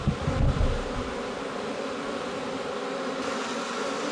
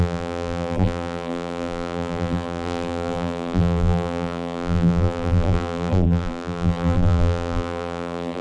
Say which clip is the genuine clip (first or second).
first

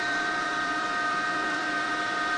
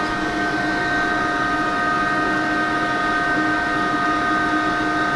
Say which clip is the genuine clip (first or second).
second